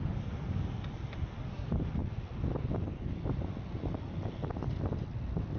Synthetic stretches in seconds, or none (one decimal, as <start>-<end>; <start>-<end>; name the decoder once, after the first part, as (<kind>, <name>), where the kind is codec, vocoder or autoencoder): none